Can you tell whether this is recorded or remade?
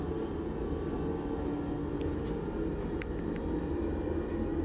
recorded